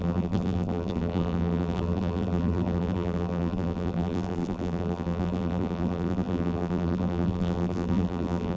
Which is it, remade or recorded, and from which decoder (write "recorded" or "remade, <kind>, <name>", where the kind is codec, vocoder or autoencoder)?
remade, vocoder, BigVGAN v2